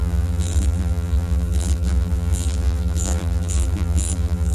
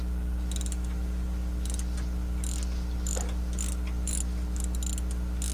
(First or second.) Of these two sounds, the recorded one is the second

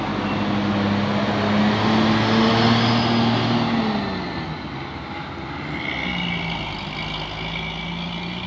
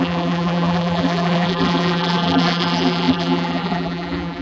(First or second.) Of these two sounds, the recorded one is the first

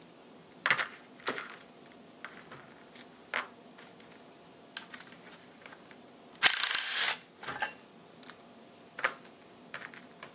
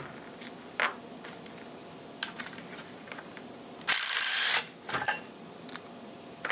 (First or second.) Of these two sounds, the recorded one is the first